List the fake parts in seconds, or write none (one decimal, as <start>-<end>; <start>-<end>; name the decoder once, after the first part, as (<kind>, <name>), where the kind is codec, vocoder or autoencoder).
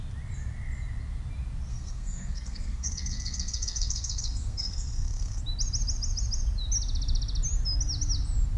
1.7-5.4 (codec, SNAC)